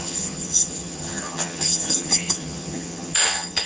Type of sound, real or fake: fake